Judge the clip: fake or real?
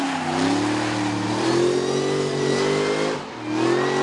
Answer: real